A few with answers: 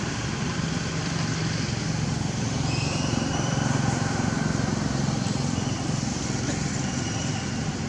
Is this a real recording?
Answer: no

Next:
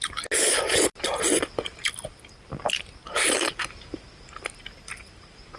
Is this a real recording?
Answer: yes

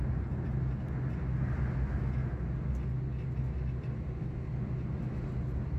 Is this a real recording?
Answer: yes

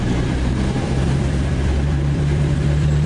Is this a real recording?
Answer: no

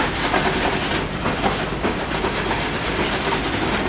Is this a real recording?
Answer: no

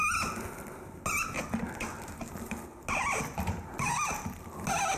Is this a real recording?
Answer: yes